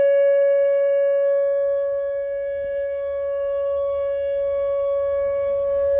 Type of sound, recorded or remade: remade